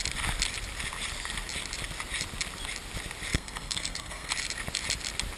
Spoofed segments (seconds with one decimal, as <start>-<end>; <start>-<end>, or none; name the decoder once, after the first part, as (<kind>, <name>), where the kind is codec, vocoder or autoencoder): 3.3-4.3 (codec, SNAC)